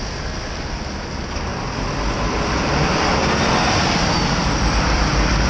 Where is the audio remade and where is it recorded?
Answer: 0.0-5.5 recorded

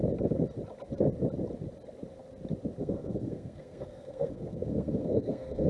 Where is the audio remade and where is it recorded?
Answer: 0.0-2.8 recorded; 2.8-5.7 remade

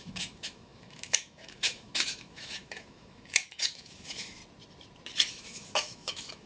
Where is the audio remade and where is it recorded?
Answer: 0.0-4.4 remade; 4.4-5.3 recorded; 5.3-6.5 remade